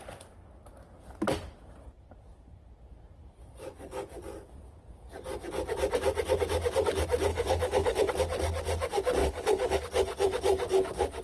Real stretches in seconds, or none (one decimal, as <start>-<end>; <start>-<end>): 0.0-7.3; 8.1-9.2; 9.8-11.2